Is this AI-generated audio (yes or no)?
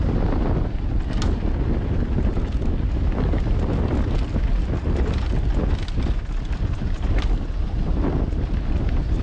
no